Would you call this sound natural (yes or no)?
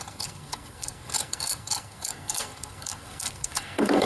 no